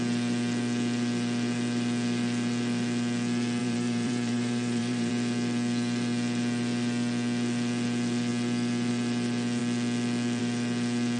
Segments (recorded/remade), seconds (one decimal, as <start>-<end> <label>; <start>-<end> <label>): 0.0-3.6 recorded; 3.6-5.1 remade; 5.1-11.2 recorded

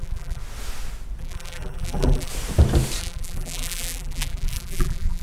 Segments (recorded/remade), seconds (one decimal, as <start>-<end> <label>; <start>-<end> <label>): 0.0-0.4 remade; 0.4-1.2 recorded; 1.2-2.3 remade; 2.3-3.0 recorded; 3.0-5.2 remade

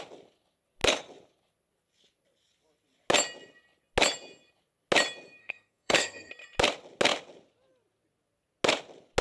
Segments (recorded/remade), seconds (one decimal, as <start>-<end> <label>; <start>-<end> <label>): 0.0-5.4 recorded; 5.4-6.3 remade; 6.3-9.2 recorded

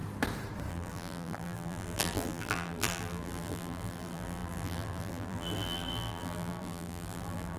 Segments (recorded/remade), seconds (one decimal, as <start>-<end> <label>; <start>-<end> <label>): 0.0-0.7 recorded; 0.7-7.6 remade

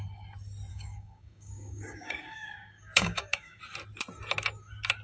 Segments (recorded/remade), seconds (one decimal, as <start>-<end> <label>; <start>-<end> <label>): 0.0-0.7 recorded; 0.7-3.6 remade; 3.6-5.0 recorded

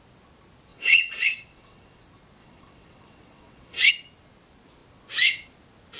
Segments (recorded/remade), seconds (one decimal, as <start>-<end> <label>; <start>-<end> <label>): 0.0-0.7 recorded; 0.7-2.0 remade; 2.0-2.4 recorded; 2.4-3.9 remade; 3.9-6.0 recorded

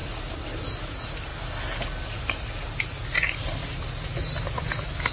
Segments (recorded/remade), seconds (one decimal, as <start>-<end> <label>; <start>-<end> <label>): 0.0-5.1 recorded